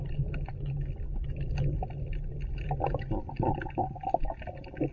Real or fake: real